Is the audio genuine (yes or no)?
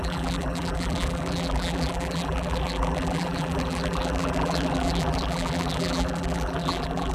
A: no